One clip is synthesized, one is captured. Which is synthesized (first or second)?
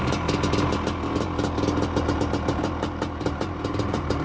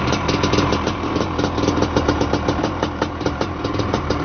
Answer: second